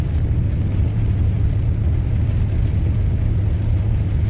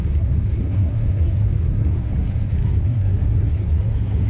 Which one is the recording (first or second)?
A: first